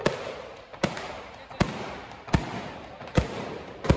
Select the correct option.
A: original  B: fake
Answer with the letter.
A